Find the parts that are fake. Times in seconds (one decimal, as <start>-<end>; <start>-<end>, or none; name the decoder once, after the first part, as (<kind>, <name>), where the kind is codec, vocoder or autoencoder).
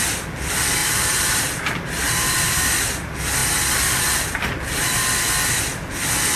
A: 0.8-2.6 (vocoder, BigVGAN v2)